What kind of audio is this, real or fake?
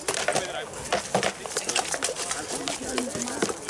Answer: real